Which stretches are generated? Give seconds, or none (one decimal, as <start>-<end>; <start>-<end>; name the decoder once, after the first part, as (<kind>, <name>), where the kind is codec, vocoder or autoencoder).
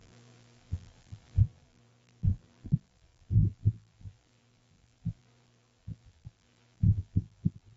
0.0-7.8 (vocoder, BigVGAN v2)